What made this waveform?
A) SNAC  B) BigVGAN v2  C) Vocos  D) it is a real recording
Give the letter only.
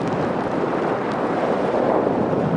D